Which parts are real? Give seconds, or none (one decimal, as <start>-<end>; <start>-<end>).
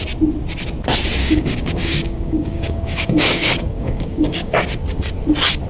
0.0-1.2; 4.6-5.7